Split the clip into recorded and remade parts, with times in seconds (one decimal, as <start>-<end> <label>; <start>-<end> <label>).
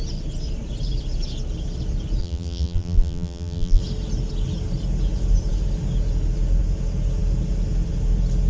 0.0-2.2 recorded; 2.2-3.8 remade; 3.8-8.5 recorded